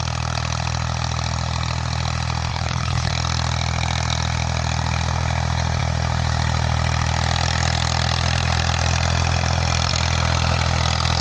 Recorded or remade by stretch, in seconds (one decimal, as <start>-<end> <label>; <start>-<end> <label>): 0.0-2.5 recorded; 2.5-3.1 remade; 3.1-11.2 recorded